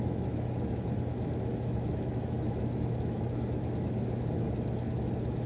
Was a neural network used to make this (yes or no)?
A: yes